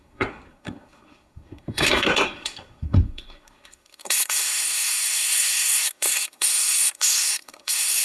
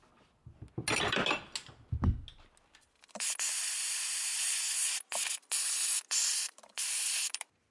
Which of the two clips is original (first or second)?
second